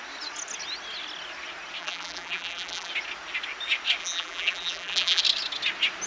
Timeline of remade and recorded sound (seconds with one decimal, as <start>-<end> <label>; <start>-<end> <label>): 0.0-1.8 recorded; 1.8-2.9 remade; 2.9-4.0 recorded; 4.0-5.2 remade; 5.2-6.1 recorded